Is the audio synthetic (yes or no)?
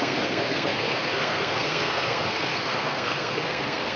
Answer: yes